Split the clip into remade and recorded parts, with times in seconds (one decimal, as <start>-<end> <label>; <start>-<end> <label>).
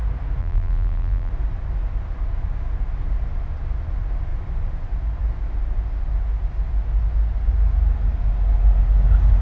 0.0-0.4 recorded; 0.4-1.3 remade; 1.3-9.4 recorded